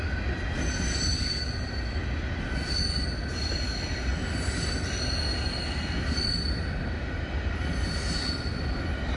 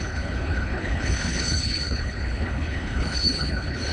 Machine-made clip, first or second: second